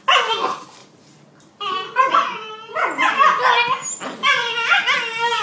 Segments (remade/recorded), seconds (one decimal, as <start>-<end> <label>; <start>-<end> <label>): 0.0-0.8 recorded; 0.8-2.5 remade; 2.5-5.4 recorded